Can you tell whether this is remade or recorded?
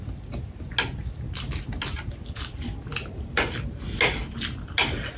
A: recorded